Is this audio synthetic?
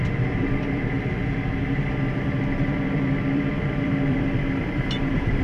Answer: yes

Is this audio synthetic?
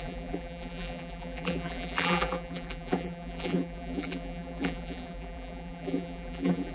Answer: yes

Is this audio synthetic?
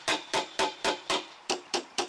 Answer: yes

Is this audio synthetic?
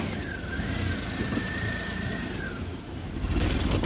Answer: no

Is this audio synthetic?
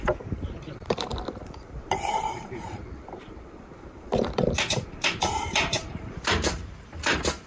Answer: yes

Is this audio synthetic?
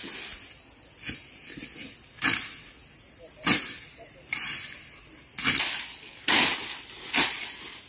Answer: no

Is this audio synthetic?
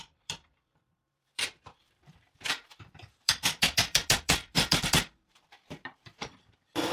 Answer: yes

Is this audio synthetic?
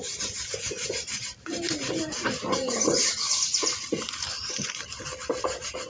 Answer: yes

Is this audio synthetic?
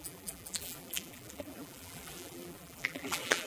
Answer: yes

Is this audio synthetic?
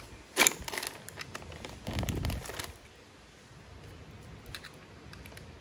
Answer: no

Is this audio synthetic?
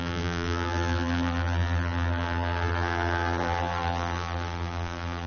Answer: yes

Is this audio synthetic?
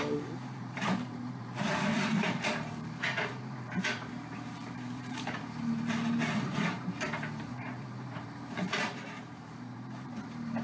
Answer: yes